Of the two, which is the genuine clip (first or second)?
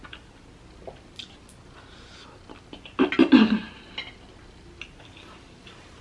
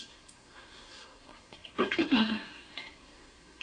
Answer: first